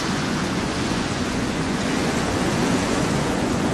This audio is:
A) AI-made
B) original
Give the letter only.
A